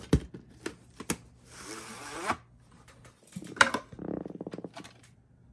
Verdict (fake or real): real